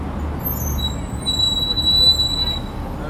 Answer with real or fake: real